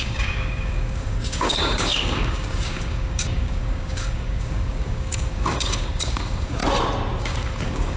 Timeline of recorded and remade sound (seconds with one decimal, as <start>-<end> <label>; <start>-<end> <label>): 0.0-6.6 remade; 6.6-7.2 recorded; 7.2-8.0 remade